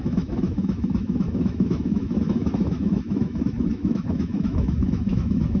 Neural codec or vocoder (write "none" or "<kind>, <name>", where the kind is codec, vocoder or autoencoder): autoencoder, DAC-VAE